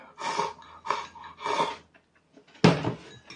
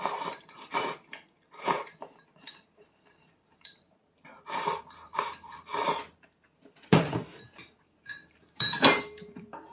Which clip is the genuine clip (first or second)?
first